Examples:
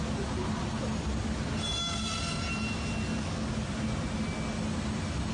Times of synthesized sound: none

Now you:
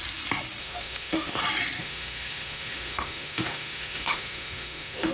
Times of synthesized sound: 0.6-1.4 (autoencoder, DAC-VAE); 1.8-5.1

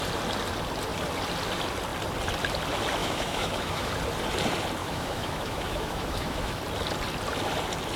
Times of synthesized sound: 3.0-3.9 (autoencoder, DAC-VAE); 4.8-6.6

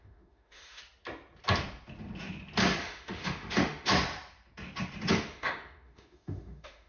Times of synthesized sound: 0.0-0.8 (autoencoder, DAC-VAE); 2.8-3.9; 5.1-6.9

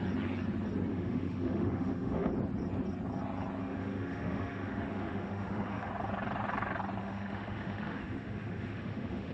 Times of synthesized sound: 0.9-2.3 (autoencoder, DAC-VAE); 3.6-5.9; 7.0-9.3